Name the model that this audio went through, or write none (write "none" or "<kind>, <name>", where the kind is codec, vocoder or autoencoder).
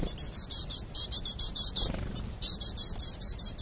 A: vocoder, BigVGAN v2